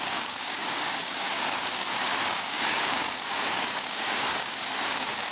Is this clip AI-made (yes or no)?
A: yes